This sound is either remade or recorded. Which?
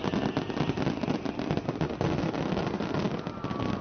recorded